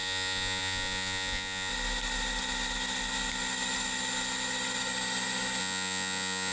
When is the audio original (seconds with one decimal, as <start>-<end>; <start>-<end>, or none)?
1.7-5.6